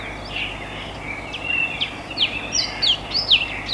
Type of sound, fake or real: real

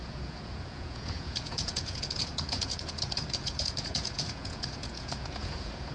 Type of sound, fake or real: fake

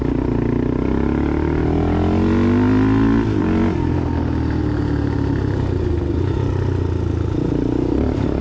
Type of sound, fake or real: real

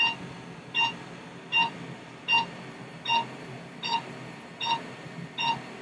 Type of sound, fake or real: real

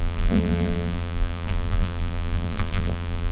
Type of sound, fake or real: fake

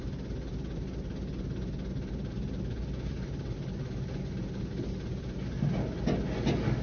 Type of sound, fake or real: real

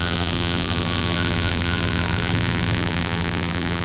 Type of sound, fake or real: fake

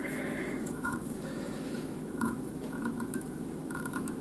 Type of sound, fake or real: fake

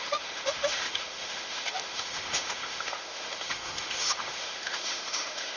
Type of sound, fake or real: fake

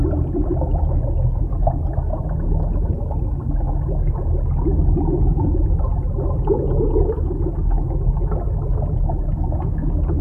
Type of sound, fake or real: real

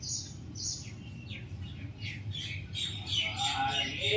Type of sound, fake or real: real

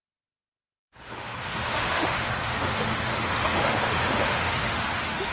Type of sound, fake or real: fake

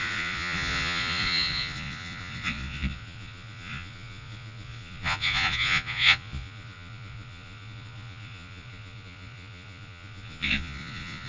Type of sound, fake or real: fake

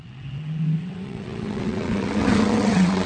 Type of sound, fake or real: fake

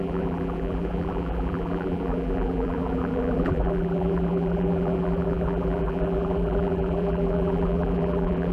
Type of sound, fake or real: fake